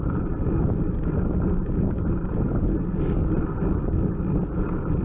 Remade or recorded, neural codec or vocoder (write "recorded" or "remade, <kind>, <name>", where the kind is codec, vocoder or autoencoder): recorded